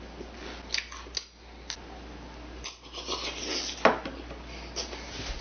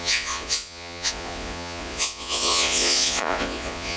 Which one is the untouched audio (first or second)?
first